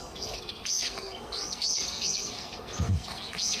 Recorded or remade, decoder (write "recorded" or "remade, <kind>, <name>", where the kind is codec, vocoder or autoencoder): remade, codec, SNAC